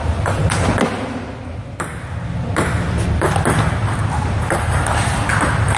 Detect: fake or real real